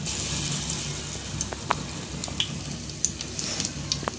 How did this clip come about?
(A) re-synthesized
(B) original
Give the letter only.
B